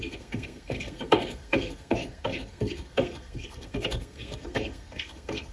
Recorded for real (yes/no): no